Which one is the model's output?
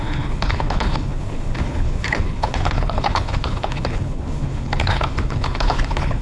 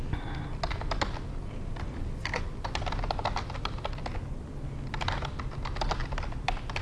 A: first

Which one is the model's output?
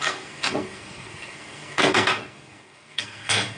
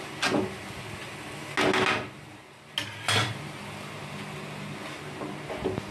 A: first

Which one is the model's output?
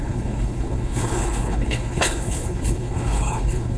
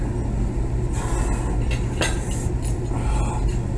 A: first